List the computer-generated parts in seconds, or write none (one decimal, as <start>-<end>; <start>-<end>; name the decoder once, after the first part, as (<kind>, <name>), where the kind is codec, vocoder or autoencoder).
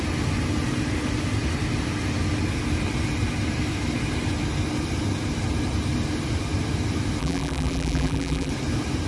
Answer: 7.2-8.5 (vocoder, BigVGAN v2)